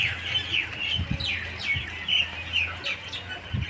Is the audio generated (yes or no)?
no